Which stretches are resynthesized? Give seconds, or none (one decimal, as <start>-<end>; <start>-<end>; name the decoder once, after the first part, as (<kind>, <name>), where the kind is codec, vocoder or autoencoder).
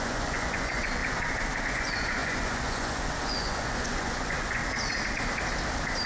0.0-1.0 (vocoder, Vocos); 1.6-4.6